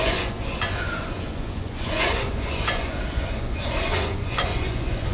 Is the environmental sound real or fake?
fake